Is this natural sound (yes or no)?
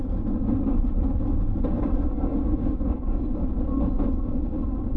yes